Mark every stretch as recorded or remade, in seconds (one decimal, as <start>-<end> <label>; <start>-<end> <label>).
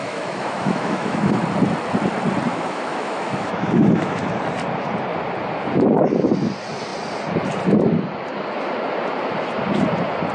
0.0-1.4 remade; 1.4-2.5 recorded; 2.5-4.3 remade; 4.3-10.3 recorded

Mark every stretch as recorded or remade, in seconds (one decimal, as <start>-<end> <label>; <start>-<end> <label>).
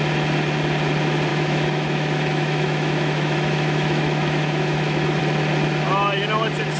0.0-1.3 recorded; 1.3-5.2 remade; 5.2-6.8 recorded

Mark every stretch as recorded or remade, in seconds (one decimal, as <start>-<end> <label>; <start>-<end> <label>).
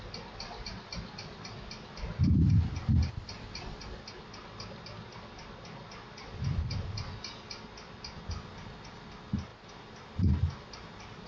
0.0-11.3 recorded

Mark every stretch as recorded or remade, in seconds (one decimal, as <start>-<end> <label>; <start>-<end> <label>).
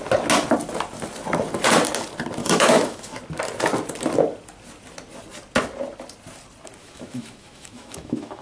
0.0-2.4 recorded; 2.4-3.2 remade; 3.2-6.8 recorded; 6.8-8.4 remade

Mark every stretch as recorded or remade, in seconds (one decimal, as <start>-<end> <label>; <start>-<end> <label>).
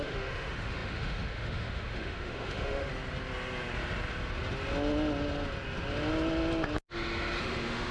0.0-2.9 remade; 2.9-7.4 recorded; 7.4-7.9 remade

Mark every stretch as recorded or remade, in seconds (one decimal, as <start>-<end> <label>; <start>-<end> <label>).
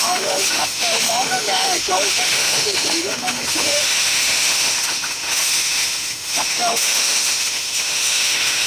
0.0-8.7 remade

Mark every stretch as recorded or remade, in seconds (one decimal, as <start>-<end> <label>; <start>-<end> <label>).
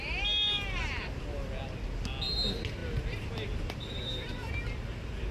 0.0-5.3 recorded